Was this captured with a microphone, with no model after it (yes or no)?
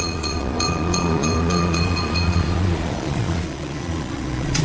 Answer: no